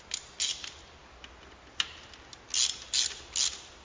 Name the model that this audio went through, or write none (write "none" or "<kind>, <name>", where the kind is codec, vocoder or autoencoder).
none